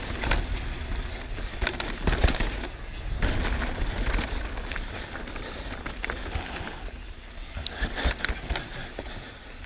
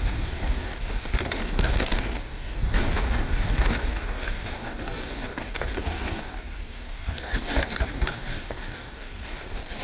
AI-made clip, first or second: second